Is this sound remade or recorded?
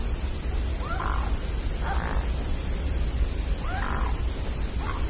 recorded